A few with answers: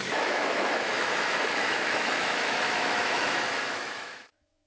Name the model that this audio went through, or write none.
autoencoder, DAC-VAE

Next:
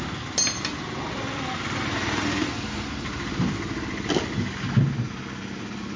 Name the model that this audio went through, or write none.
none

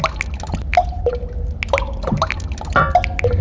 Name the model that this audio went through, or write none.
none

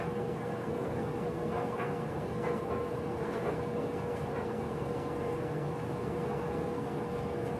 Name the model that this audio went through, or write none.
codec, SNAC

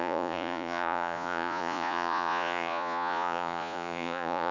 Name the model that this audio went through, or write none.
vocoder, Vocos